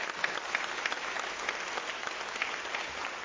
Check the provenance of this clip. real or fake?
real